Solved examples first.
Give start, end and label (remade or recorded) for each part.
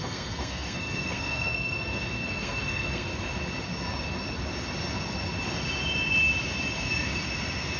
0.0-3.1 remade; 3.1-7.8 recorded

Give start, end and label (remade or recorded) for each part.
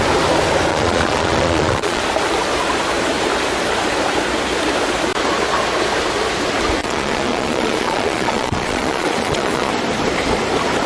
0.0-0.7 recorded; 0.7-2.0 remade; 2.0-6.8 recorded; 6.8-9.7 remade; 9.7-10.9 recorded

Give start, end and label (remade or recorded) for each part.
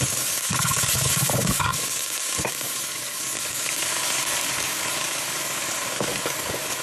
0.0-6.8 remade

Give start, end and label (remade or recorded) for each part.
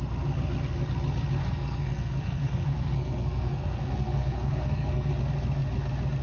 0.0-1.4 recorded; 1.4-5.1 remade; 5.1-6.2 recorded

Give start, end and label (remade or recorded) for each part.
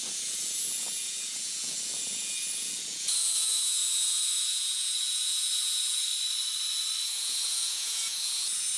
0.0-6.1 remade; 6.1-7.0 recorded; 7.0-8.8 remade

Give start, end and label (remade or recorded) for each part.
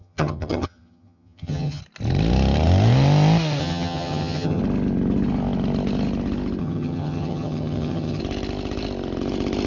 0.0-1.8 remade; 1.8-3.6 recorded; 3.6-4.6 remade; 4.6-6.6 recorded; 6.6-8.2 remade; 8.2-9.7 recorded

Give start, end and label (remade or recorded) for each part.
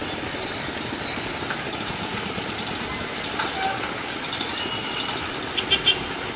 0.0-6.4 recorded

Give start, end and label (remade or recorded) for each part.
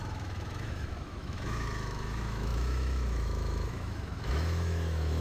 0.0-5.2 remade